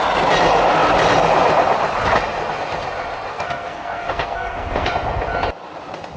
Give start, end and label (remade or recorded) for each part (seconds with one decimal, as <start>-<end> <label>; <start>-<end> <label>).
0.0-3.3 recorded; 3.3-4.9 remade; 4.9-6.2 recorded